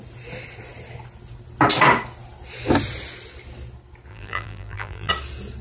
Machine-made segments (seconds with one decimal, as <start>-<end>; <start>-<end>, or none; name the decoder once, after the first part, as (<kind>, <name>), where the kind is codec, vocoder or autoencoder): 4.1-5.1 (vocoder, BigVGAN v2)

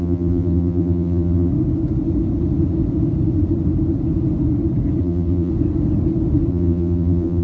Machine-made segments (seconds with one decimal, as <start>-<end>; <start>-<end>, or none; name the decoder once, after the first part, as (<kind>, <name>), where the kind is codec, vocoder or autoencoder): 0.0-1.5 (vocoder, BigVGAN v2); 5.0-5.5; 6.5-7.4

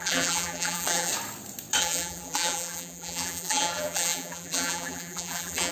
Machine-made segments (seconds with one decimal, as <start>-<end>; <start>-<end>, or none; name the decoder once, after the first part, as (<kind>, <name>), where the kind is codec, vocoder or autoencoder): 0.0-1.1 (vocoder, BigVGAN v2); 1.8-5.7

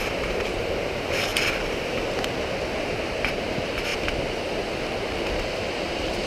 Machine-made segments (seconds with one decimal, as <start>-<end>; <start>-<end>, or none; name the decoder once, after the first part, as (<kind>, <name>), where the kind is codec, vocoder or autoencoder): 0.0-1.3 (vocoder, BigVGAN v2); 3.3-3.9; 4.7-6.3